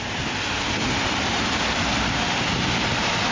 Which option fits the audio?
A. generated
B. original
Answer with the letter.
B